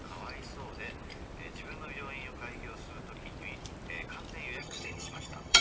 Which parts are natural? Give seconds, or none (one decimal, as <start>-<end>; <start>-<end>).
0.0-4.6

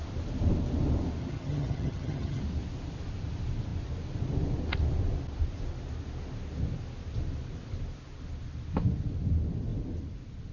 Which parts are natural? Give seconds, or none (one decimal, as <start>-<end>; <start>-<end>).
0.0-1.2; 2.4-10.5

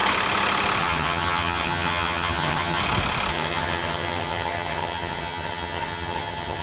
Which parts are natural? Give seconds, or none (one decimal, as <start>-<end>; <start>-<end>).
0.0-0.8; 2.8-3.3

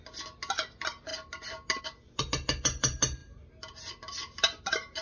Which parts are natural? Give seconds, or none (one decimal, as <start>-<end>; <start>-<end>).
0.0-5.0